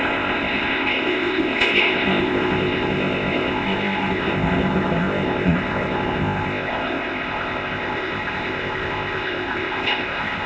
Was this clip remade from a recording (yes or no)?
yes